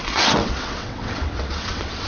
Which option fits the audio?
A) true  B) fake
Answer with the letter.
B